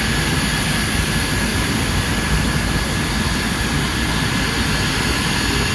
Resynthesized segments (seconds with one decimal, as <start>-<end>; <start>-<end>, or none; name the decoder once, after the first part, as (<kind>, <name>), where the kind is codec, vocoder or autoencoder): none